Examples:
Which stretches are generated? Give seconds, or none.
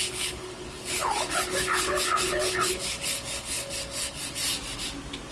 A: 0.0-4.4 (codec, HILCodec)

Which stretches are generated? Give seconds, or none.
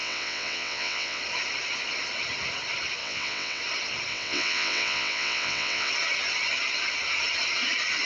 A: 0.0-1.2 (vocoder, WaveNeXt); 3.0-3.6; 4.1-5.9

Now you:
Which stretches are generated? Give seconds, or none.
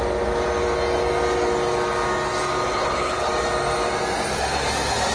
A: 2.7-3.3 (codec, HILCodec)